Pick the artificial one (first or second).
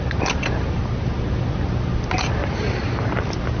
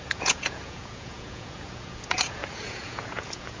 second